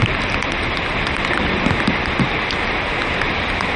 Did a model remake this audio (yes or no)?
no